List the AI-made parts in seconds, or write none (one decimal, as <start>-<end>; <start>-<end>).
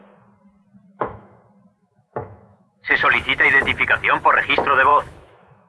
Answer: 0.9-1.4; 1.8-3.6; 4.9-5.7